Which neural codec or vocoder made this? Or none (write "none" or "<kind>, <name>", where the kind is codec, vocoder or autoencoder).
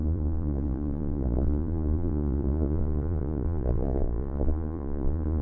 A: vocoder, Vocos